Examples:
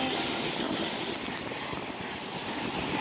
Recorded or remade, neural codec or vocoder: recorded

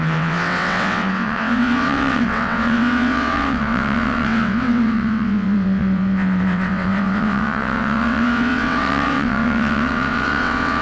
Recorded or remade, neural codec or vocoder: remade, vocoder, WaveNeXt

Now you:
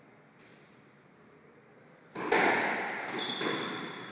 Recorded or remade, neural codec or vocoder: recorded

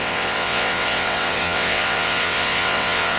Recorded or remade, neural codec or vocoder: remade, vocoder, WaveNeXt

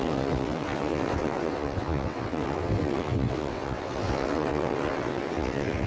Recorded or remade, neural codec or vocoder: remade, vocoder, WaveNeXt